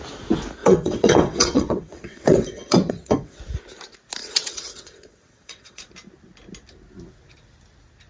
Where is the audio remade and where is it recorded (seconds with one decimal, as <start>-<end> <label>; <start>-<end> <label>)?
0.0-0.6 recorded; 0.6-3.4 remade; 3.4-4.2 recorded; 4.2-5.8 remade; 5.8-8.1 recorded